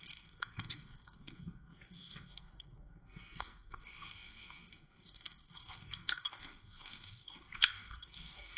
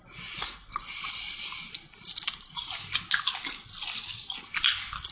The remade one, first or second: first